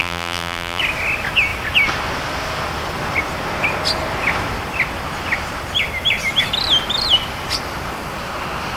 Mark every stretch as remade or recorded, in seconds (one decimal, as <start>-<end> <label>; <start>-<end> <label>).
0.0-0.8 remade; 0.8-8.8 recorded